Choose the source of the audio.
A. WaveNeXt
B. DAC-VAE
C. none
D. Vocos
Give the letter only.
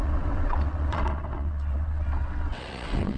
A